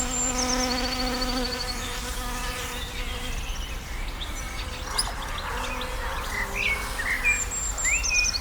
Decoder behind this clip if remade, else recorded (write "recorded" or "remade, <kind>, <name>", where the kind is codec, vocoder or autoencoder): recorded